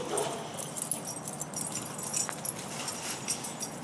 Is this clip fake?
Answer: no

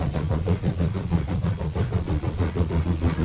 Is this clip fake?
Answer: yes